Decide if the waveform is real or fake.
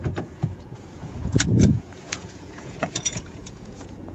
fake